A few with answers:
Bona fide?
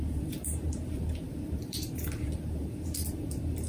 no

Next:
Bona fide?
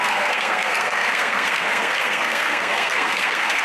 no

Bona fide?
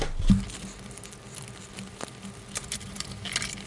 yes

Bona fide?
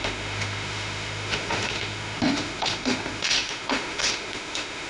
no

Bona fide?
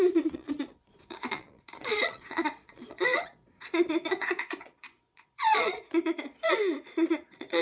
no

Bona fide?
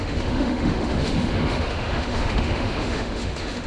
no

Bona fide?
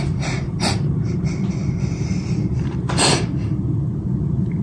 no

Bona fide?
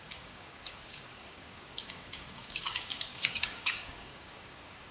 no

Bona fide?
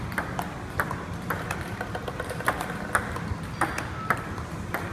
yes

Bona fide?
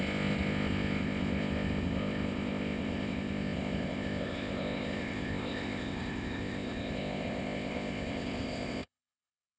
no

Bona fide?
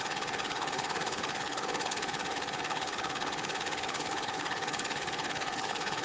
no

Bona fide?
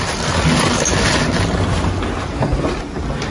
yes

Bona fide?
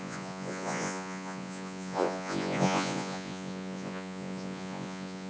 no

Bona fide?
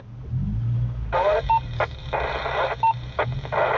yes